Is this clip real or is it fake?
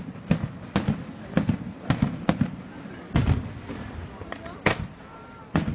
real